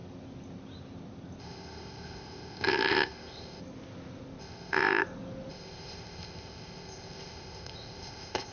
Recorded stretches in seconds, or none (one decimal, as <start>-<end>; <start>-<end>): 0.0-1.4; 3.6-4.4; 5.0-5.5